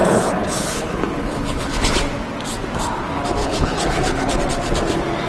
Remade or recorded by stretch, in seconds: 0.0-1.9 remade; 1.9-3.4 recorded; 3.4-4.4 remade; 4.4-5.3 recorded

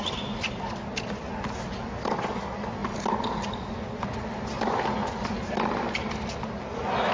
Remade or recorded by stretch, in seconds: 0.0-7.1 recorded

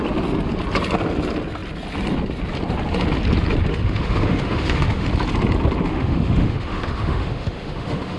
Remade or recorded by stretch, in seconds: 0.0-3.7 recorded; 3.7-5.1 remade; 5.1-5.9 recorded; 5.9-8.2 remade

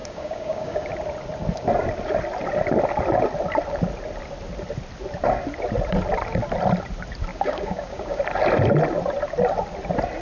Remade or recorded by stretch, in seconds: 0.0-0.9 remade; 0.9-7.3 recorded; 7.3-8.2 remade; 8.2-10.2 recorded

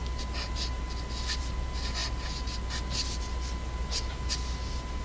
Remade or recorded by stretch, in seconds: 0.0-5.0 recorded